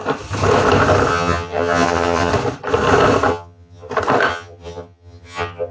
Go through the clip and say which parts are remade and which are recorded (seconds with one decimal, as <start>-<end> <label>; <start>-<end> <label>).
0.0-1.1 recorded; 1.1-2.3 remade; 2.3-3.3 recorded; 3.3-3.9 remade; 3.9-4.3 recorded; 4.3-5.7 remade